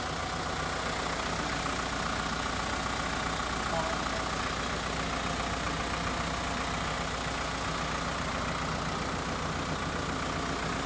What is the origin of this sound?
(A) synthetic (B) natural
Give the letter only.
B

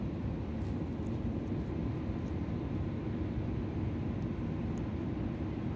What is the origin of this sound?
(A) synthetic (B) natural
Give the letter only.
B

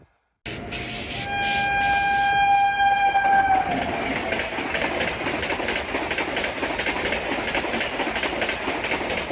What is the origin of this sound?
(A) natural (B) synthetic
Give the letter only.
A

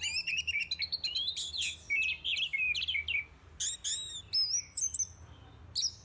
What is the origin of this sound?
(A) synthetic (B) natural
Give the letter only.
B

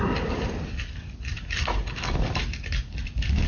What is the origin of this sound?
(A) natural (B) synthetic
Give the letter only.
A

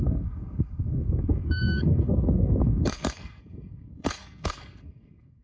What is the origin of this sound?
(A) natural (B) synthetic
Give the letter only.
B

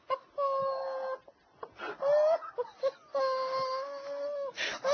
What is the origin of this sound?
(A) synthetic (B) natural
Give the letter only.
B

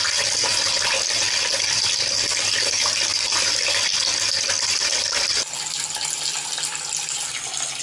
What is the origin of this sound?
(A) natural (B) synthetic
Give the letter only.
A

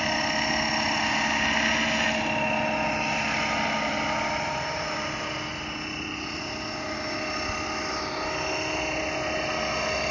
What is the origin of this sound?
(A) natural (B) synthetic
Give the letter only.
A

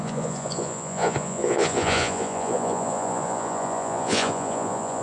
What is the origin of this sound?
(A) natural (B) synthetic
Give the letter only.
B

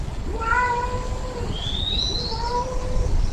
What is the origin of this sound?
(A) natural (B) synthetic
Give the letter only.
A